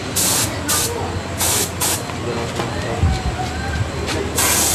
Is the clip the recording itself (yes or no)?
yes